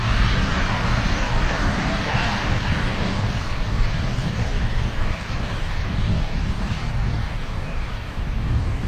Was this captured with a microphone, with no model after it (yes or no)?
no